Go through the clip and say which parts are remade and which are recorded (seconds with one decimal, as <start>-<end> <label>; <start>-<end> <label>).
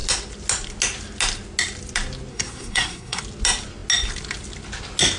0.0-2.3 recorded; 2.3-3.2 remade; 3.2-5.2 recorded